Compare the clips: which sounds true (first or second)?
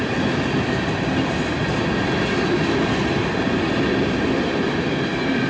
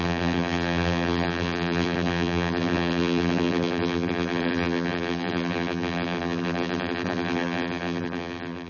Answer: first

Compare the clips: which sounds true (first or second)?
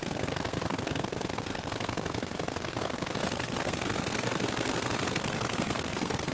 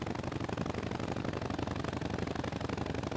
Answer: second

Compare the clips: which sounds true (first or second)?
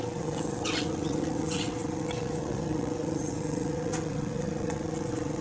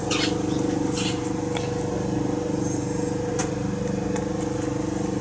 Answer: second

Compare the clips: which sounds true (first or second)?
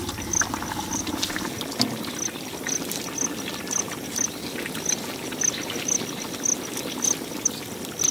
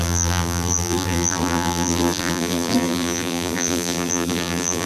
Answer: first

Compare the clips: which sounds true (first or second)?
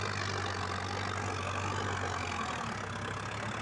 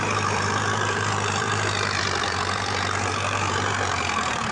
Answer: first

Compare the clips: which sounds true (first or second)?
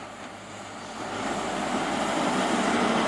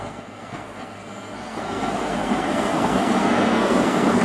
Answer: first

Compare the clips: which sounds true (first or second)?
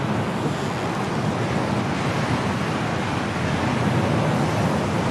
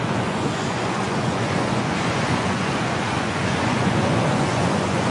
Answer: first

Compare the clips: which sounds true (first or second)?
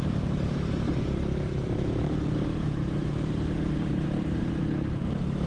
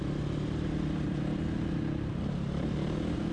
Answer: second